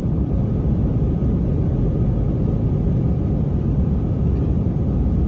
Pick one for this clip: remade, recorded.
remade